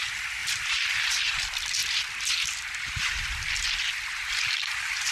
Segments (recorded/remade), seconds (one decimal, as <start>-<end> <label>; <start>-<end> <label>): 0.0-5.1 recorded